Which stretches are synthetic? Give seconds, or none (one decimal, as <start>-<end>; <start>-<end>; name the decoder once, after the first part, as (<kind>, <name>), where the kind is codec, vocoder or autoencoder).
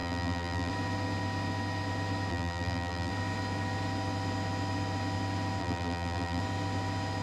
0.0-0.7 (vocoder, BigVGAN v2); 2.3-3.1; 5.6-6.4